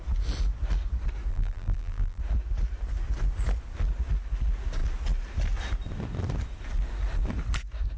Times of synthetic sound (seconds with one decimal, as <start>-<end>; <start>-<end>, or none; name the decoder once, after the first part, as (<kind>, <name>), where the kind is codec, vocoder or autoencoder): 1.3-2.2 (vocoder, BigVGAN v2)